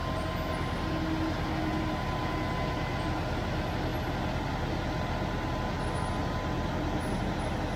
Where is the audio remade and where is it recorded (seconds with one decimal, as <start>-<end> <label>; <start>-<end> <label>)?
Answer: 0.0-7.8 recorded